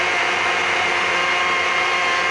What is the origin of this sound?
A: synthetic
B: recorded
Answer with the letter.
B